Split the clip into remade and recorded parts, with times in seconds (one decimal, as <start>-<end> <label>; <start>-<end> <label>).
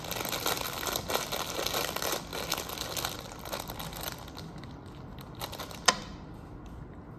0.0-7.2 recorded